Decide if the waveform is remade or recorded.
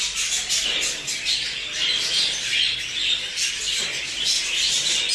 recorded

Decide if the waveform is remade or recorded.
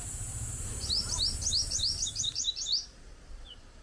remade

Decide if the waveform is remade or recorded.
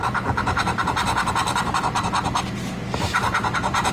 remade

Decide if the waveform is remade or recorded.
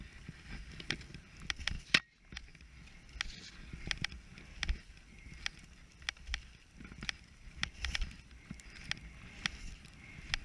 recorded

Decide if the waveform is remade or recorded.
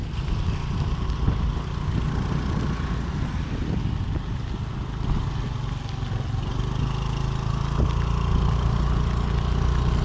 recorded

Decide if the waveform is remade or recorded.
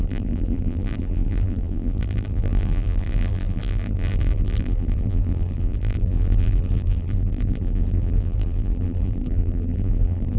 remade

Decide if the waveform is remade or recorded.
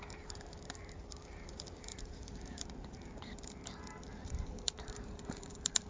remade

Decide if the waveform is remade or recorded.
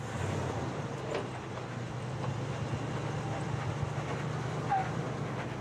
recorded